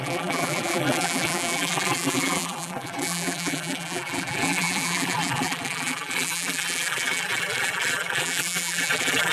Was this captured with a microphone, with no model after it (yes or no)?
no